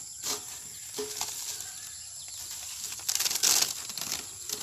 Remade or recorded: recorded